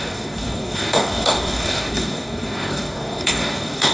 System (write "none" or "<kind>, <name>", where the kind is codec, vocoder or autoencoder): codec, DAC